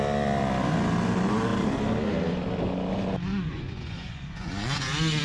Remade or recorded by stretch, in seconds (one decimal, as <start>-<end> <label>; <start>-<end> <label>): 0.0-3.3 recorded; 3.3-5.2 remade